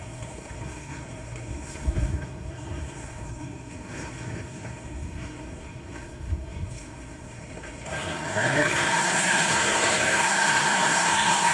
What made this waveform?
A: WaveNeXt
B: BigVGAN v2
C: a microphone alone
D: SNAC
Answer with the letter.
D